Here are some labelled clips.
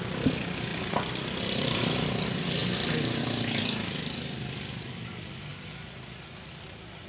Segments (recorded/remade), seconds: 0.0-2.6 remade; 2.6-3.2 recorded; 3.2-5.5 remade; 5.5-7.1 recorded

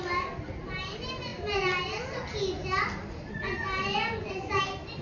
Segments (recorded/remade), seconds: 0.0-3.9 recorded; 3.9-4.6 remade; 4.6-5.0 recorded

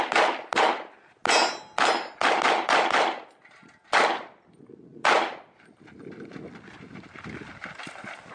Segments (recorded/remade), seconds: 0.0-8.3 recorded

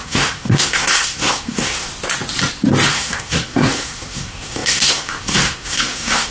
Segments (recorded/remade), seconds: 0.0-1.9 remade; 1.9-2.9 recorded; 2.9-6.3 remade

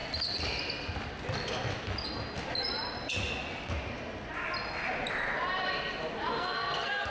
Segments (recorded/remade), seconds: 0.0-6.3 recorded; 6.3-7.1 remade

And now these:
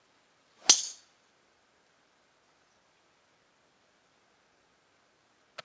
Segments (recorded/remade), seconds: 0.0-5.6 recorded

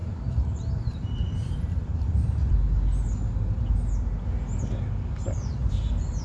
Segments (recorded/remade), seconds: 0.0-2.5 remade; 2.5-5.6 recorded; 5.6-6.2 remade

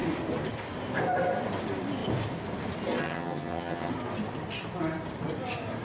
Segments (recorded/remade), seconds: 0.0-3.0 recorded; 3.0-3.9 remade; 3.9-5.8 recorded